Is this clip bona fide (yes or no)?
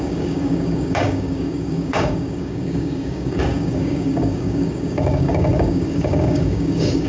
no